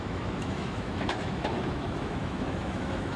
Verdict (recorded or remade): remade